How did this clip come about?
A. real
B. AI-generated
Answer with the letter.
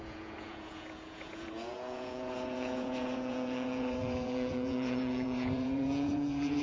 B